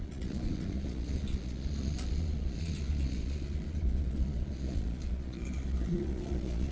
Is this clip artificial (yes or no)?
yes